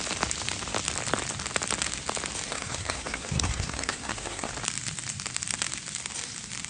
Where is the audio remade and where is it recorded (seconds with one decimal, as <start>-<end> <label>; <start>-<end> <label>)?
0.0-2.5 recorded; 2.5-4.5 remade; 4.5-6.7 recorded